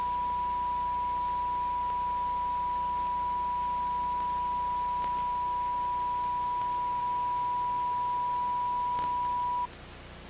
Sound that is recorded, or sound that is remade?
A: recorded